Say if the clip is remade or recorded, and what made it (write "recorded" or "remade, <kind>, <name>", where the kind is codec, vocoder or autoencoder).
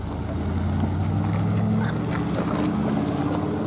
recorded